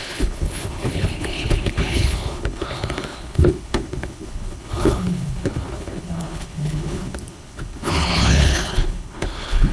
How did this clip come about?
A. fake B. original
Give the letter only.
A